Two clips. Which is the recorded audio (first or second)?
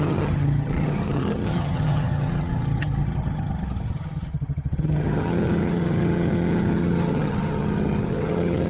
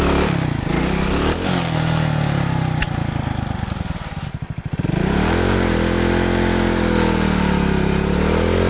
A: second